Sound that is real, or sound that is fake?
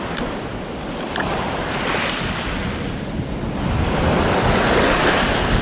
real